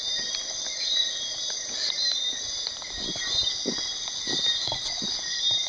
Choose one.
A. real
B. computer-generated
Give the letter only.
B